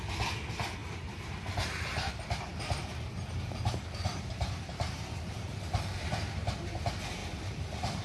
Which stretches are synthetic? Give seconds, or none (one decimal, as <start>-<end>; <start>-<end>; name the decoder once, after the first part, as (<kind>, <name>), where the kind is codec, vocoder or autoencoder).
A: 0.8-2.1 (vocoder, BigVGAN v2); 2.5-5.9; 7.2-8.0